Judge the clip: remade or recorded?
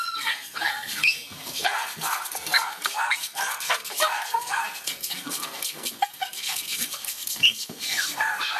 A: remade